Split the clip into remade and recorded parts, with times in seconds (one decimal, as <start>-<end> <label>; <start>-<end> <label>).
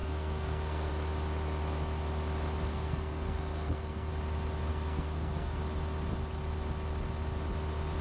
0.0-0.9 remade; 0.9-2.7 recorded; 2.7-4.1 remade; 4.1-4.7 recorded; 4.7-5.6 remade; 5.6-8.0 recorded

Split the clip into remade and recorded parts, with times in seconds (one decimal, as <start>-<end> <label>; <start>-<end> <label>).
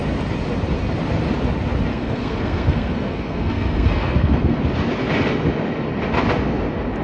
0.0-1.9 recorded; 1.9-4.6 remade; 4.6-7.0 recorded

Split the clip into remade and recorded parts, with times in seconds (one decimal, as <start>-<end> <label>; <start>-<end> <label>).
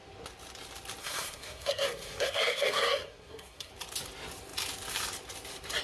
0.0-1.0 recorded; 1.0-3.7 remade; 3.7-5.8 recorded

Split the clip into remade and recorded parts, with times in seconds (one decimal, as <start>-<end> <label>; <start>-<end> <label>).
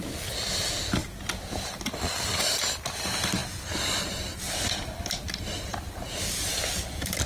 0.0-7.3 recorded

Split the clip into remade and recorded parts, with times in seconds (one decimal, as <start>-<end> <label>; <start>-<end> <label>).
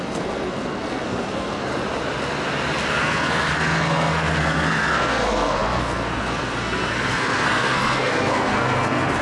0.0-1.7 remade; 1.7-2.9 recorded; 2.9-9.2 remade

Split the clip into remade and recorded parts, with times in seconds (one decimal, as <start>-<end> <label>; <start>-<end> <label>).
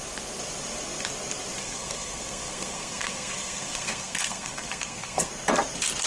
0.0-1.6 recorded; 1.6-5.3 remade; 5.3-6.1 recorded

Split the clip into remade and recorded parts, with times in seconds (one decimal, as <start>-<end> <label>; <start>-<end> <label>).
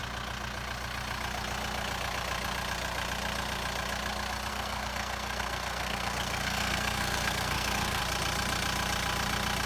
0.0-4.5 recorded; 4.5-8.0 remade; 8.0-9.7 recorded